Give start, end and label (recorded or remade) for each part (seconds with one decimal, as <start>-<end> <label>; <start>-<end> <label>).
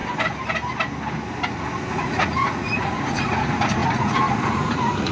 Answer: 0.0-1.9 recorded; 1.9-5.1 remade